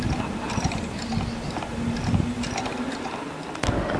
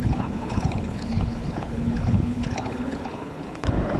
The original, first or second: first